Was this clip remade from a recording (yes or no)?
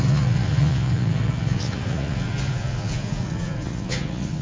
yes